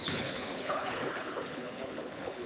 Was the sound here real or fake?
fake